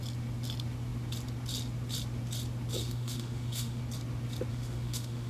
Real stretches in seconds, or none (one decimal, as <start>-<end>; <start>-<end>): 0.0-2.8; 3.8-4.5